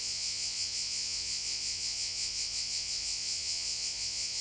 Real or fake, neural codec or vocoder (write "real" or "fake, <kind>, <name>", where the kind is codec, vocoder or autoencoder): fake, vocoder, Vocos